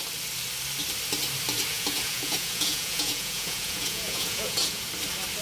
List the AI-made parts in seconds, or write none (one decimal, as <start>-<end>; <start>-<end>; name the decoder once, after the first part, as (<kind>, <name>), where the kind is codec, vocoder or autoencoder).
1.7-4.9 (vocoder, Vocos)